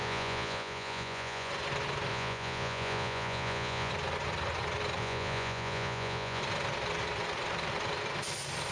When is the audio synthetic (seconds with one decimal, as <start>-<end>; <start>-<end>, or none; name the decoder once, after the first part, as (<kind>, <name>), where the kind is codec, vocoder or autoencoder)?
0.0-1.5 (vocoder, Vocos); 2.1-3.9; 5.0-6.4